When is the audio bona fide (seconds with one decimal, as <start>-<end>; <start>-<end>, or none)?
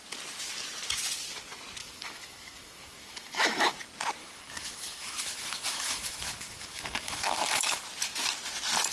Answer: 0.0-1.8; 3.7-4.2; 7.8-8.9